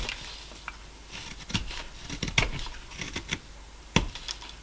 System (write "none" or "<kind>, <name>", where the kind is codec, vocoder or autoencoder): none